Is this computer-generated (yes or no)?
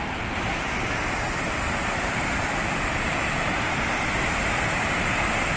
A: no